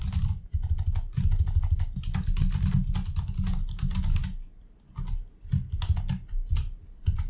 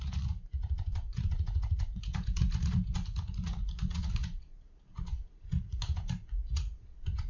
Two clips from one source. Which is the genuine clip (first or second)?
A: first